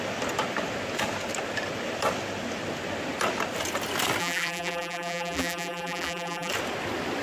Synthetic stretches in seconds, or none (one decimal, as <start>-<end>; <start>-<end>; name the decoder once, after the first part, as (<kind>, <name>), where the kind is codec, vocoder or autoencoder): 4.2-6.5 (vocoder, BigVGAN v2)